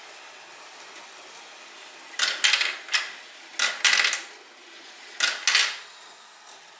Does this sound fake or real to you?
real